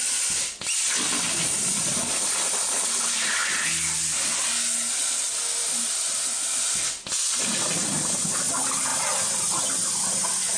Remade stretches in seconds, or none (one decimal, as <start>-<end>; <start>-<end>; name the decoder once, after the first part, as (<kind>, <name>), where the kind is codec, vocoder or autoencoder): none